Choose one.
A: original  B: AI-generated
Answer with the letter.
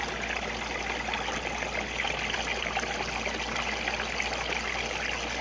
A